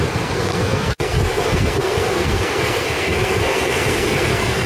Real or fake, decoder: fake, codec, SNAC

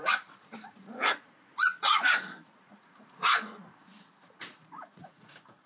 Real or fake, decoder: fake, vocoder, Vocos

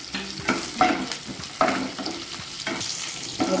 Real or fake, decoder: real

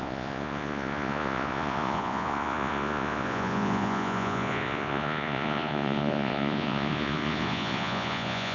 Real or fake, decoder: fake, vocoder, Vocos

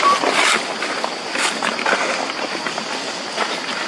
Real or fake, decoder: real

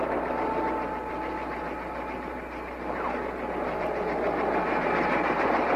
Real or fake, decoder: real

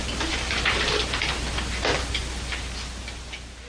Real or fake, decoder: real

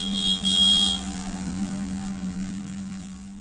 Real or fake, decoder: fake, vocoder, BigVGAN v2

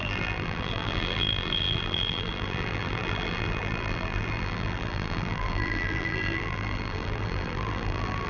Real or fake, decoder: fake, vocoder, BigVGAN v2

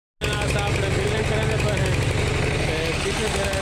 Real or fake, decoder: real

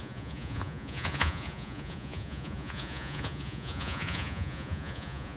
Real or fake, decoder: fake, vocoder, Vocos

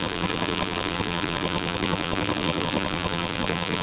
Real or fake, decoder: fake, vocoder, BigVGAN v2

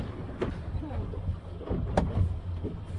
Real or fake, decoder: real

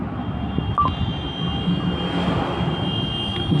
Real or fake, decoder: real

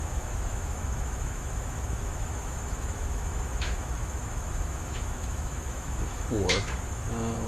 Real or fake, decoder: fake, autoencoder, DAC-VAE